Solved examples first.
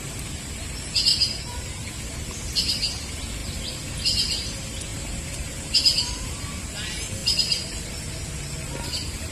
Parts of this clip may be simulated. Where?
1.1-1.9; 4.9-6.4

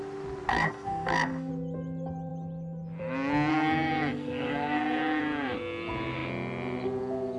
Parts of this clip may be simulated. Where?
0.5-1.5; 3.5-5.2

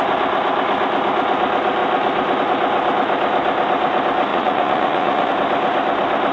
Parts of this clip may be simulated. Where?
4.3-5.3